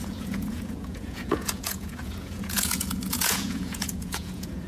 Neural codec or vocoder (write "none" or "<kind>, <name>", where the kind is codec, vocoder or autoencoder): vocoder, Vocos